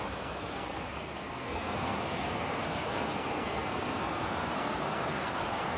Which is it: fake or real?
fake